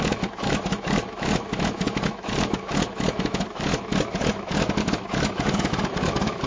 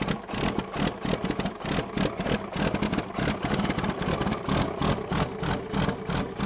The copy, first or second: first